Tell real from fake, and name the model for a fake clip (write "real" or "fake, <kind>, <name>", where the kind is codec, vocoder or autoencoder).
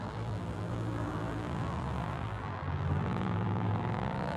fake, vocoder, BigVGAN v2